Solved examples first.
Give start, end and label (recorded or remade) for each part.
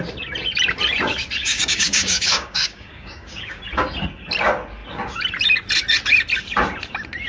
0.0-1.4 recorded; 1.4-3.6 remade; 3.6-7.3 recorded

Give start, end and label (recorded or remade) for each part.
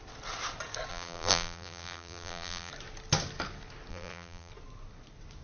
0.0-0.9 recorded; 0.9-2.7 remade; 2.7-3.9 recorded; 3.9-4.5 remade; 4.5-5.4 recorded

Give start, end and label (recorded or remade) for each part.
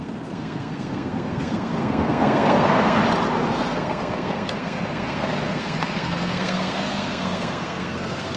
0.0-3.0 remade; 3.0-3.5 recorded; 3.5-8.4 remade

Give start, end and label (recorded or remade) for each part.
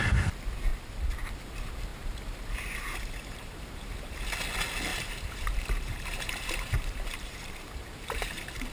0.0-0.7 recorded; 0.7-1.3 remade; 1.3-1.9 recorded; 1.9-3.9 remade; 3.9-4.9 recorded; 4.9-8.7 remade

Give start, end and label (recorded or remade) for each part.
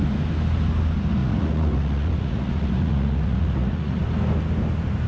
0.0-1.2 recorded; 1.2-4.0 remade; 4.0-5.1 recorded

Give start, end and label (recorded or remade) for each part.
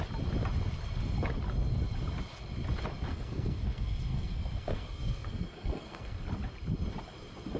0.0-3.1 recorded; 3.1-6.2 remade; 6.2-7.6 recorded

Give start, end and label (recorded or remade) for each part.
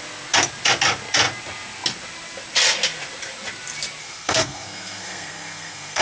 0.0-4.0 recorded; 4.0-6.0 remade